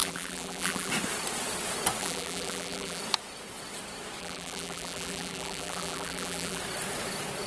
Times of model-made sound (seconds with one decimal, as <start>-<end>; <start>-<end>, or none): 0.0-0.9; 2.0-3.0; 4.2-6.6